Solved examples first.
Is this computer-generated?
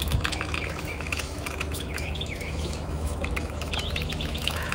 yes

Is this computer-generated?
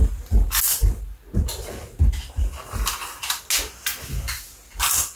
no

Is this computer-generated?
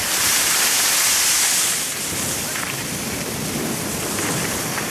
no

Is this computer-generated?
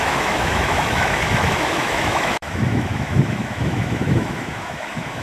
yes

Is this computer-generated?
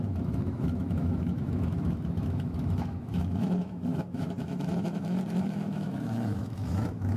yes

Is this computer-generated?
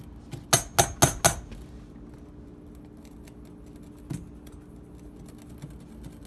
no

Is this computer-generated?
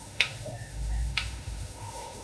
yes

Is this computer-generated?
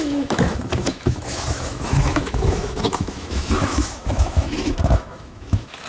yes